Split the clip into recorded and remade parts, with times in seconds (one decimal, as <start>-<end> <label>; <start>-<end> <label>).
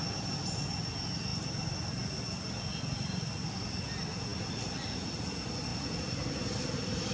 0.0-5.7 recorded; 5.7-6.4 remade; 6.4-7.1 recorded